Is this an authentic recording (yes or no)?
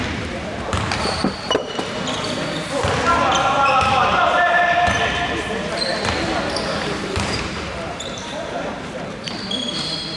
no